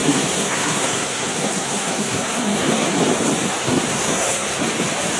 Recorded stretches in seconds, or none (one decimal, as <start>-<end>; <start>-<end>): 3.0-3.6; 4.6-5.2